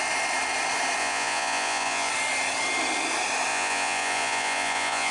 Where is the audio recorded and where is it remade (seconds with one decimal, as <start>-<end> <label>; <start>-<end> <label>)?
0.0-1.0 recorded; 1.0-2.1 remade; 2.1-3.5 recorded; 3.5-5.1 remade